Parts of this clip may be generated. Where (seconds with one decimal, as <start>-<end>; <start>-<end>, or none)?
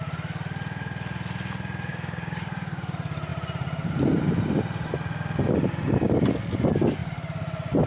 1.9-2.9